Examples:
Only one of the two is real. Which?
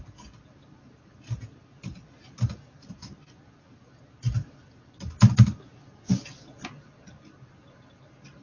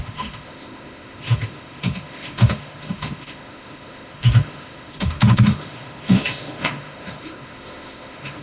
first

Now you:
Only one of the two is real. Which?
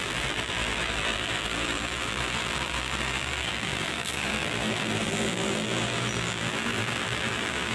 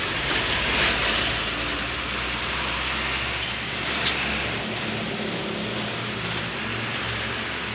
second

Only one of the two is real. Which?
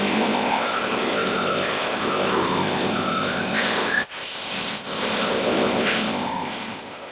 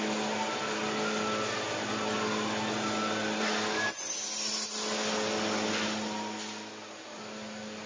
second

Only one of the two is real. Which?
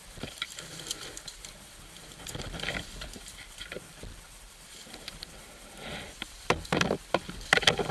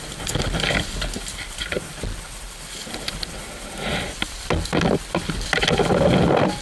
second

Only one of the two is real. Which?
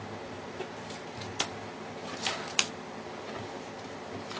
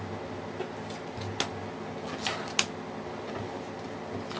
second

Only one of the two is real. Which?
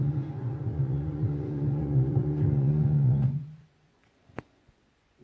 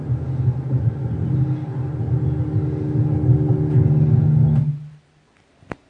second